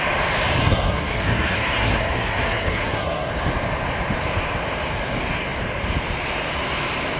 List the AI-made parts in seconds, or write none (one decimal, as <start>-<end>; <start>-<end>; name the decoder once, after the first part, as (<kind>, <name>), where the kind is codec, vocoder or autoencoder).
0.6-3.3 (codec, SNAC)